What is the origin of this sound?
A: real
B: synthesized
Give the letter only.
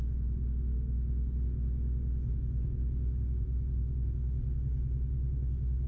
A